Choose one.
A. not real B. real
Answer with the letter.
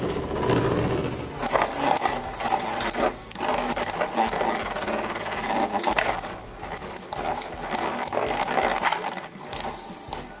B